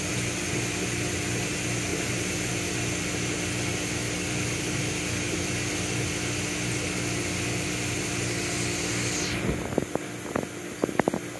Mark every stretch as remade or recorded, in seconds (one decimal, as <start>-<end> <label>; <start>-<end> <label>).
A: 0.0-1.9 recorded; 1.9-2.5 remade; 2.5-11.4 recorded